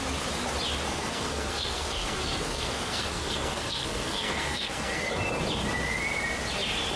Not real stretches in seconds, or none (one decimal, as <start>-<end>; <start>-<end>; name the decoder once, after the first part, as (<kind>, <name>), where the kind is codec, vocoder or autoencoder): 0.9-5.1 (codec, SNAC)